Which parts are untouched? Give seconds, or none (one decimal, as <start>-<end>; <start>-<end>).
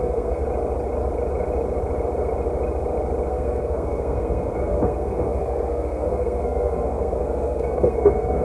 0.4-3.3